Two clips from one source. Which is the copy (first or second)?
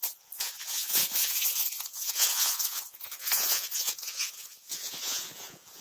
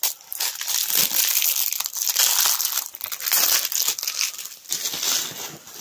first